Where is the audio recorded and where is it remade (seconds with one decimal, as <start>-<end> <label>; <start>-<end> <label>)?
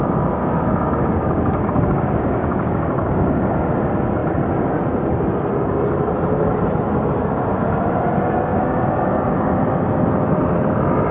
0.0-0.4 recorded; 0.4-3.7 remade; 3.7-8.5 recorded; 8.5-9.5 remade; 9.5-11.1 recorded